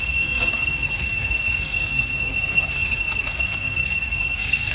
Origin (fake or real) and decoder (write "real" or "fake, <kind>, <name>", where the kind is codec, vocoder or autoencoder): fake, codec, SNAC